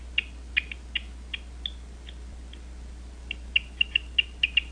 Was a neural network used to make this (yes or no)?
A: no